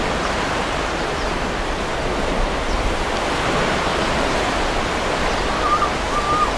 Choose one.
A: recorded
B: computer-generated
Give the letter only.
A